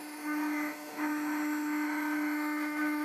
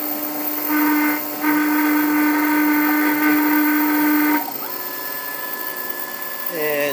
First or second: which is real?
second